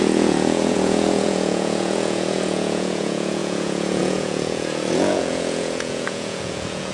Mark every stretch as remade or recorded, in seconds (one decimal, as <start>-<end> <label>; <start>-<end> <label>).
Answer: 0.0-6.9 remade

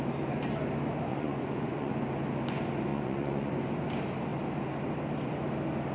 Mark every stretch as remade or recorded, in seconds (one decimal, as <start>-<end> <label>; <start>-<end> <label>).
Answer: 0.0-1.1 recorded; 1.1-1.9 remade; 1.9-2.9 recorded; 2.9-3.5 remade; 3.5-5.9 recorded

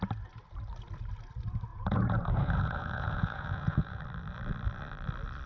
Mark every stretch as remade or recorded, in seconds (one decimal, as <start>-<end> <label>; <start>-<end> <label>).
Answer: 0.0-1.7 recorded; 1.7-4.0 remade; 4.0-5.5 recorded

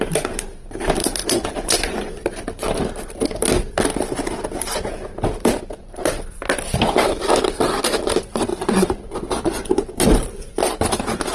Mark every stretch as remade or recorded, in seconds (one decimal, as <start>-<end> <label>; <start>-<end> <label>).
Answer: 0.0-1.2 recorded; 1.2-2.2 remade; 2.2-8.5 recorded; 8.5-9.8 remade; 9.8-11.3 recorded

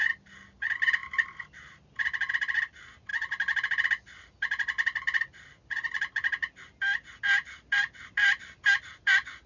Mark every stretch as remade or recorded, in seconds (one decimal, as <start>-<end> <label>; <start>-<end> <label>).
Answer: 0.0-9.5 recorded